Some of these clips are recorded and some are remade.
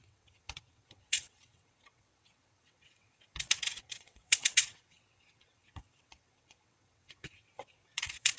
remade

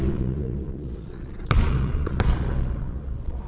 remade